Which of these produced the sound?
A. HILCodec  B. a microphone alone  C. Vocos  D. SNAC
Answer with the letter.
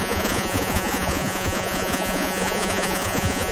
C